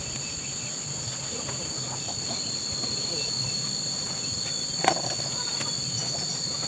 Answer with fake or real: real